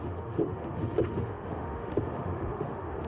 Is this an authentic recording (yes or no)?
no